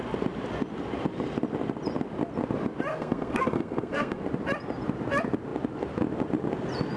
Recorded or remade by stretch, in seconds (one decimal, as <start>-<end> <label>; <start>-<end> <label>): 0.0-2.9 recorded; 2.9-4.2 remade; 4.2-7.0 recorded